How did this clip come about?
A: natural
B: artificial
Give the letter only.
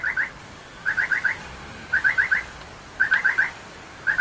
B